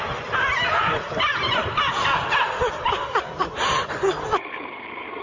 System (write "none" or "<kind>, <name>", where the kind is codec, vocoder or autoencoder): none